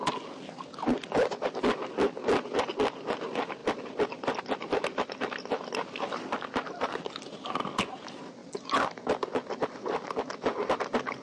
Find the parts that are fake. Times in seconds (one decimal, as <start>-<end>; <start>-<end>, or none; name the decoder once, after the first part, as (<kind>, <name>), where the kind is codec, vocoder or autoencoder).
none

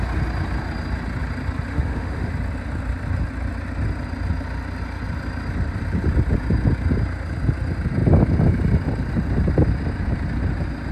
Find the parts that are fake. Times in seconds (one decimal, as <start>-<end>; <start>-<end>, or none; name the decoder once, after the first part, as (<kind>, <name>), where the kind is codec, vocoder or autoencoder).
1.7-2.3 (autoencoder, DAC-VAE)